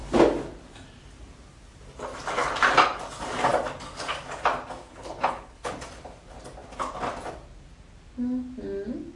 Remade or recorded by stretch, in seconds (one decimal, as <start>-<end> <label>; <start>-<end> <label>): 0.0-4.8 recorded; 4.8-5.7 remade; 5.7-9.2 recorded